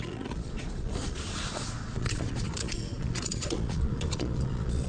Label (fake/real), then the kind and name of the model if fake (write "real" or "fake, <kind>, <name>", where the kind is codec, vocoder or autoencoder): fake, vocoder, Vocos